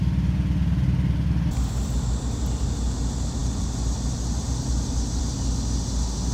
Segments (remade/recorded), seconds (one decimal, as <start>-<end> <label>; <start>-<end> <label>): 0.0-6.3 recorded